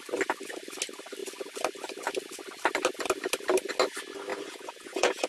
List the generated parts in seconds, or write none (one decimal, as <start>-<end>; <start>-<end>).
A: 4.3-5.3